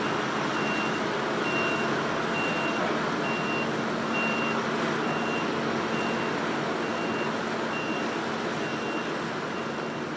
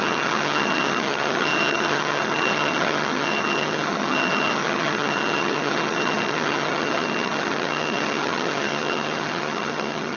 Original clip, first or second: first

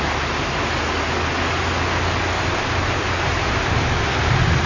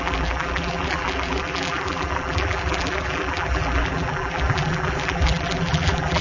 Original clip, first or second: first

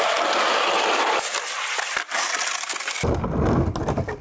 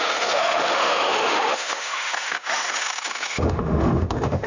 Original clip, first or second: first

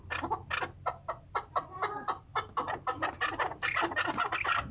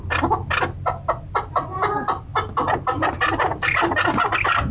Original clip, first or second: second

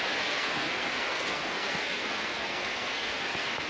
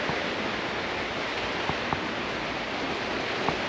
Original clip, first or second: second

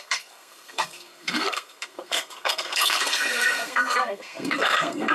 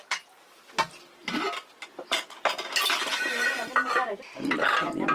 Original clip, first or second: second